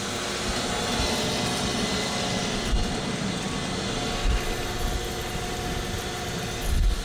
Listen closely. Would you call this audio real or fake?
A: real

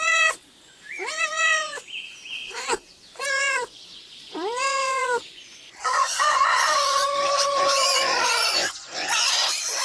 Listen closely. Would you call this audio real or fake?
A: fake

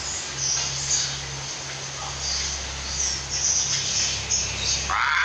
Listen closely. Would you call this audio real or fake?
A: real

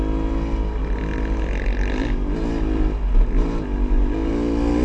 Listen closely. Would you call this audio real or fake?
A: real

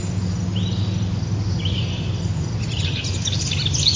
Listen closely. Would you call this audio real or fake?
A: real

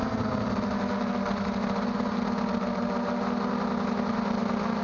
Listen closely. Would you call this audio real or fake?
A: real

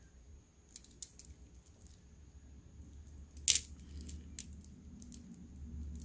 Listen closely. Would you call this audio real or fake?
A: real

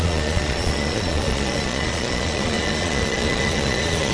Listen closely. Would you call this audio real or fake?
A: fake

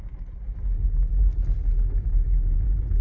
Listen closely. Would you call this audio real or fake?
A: real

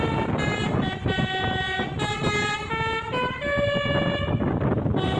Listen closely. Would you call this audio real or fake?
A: real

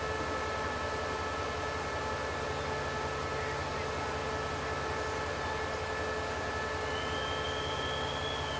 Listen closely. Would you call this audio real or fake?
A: real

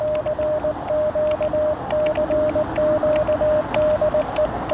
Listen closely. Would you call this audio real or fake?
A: real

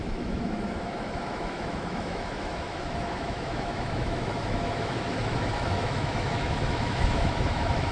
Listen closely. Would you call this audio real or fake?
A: fake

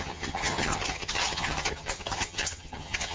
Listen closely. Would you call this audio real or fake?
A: fake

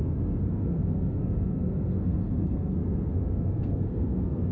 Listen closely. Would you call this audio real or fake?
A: fake